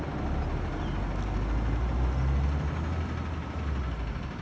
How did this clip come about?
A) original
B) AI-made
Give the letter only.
A